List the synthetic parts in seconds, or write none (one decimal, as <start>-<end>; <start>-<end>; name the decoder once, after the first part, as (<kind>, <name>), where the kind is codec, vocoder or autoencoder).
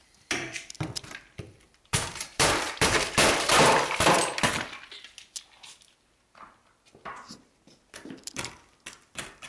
0.0-4.5 (vocoder, BigVGAN v2); 9.1-9.5